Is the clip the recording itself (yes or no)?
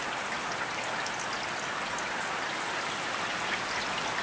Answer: yes